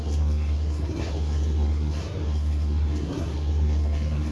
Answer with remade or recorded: remade